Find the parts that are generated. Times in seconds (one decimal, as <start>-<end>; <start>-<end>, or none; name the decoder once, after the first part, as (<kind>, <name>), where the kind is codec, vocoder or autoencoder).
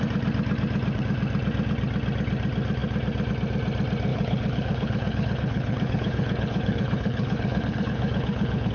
4.1-8.7 (codec, HILCodec)